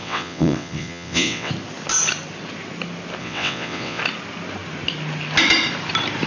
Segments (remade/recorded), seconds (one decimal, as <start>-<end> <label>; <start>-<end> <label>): 0.0-1.5 remade; 1.5-3.2 recorded; 3.2-4.0 remade; 4.0-6.3 recorded